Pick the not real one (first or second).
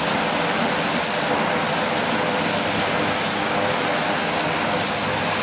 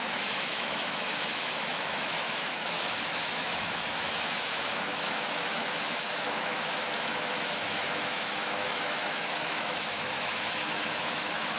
second